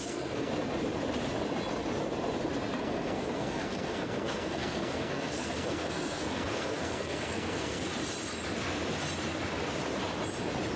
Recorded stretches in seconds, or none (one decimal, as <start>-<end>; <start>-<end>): 0.5-2.8; 7.9-10.8